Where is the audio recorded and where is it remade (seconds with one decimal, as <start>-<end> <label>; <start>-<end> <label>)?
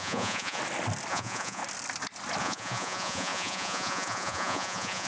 0.0-0.6 remade; 0.6-1.1 recorded; 1.1-1.6 remade; 1.6-2.4 recorded; 2.4-5.1 remade